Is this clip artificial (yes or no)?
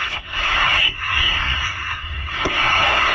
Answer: yes